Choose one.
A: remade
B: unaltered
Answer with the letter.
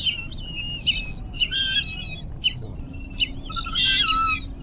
B